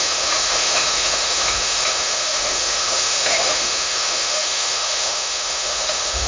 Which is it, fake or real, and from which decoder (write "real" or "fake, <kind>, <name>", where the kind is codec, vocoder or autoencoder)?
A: fake, autoencoder, DAC-VAE